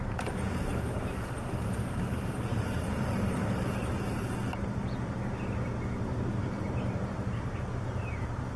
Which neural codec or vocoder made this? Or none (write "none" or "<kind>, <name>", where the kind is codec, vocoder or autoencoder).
vocoder, BigVGAN v2